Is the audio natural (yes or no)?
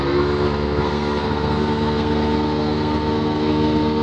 no